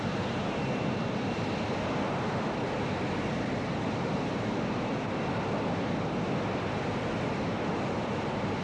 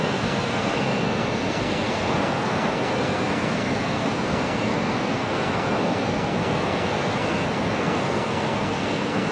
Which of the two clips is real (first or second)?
first